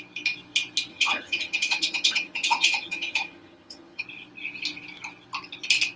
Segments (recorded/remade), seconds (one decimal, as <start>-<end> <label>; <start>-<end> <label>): 0.0-0.9 recorded; 0.9-4.0 remade; 4.0-6.0 recorded